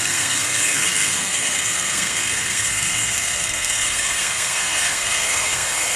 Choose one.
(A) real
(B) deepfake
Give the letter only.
B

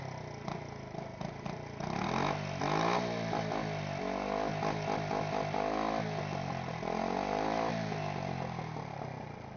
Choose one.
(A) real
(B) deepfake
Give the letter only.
A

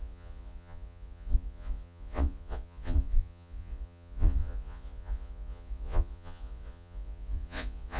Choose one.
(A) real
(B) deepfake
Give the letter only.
B